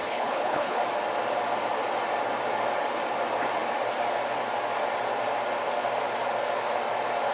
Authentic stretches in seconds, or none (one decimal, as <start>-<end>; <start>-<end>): 0.8-7.3